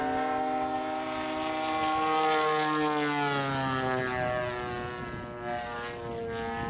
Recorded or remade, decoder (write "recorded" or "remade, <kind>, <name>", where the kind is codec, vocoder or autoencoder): recorded